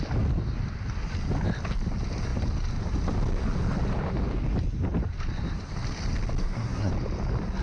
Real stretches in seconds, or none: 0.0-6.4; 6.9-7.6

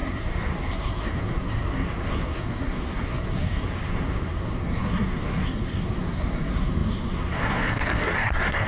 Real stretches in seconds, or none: none

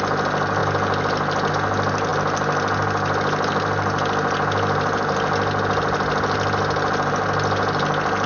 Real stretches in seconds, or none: 0.0-8.3

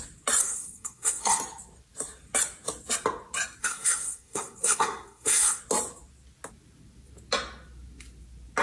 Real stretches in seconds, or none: 0.0-0.4; 1.4-3.6; 5.6-8.6

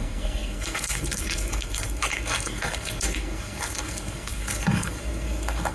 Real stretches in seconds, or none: none

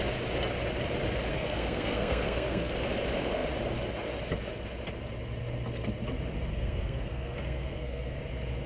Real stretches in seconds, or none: 0.0-1.3; 2.7-6.5; 8.2-8.7

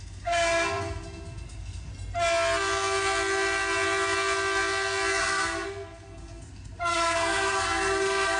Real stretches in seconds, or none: 1.9-5.2